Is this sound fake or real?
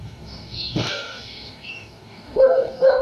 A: fake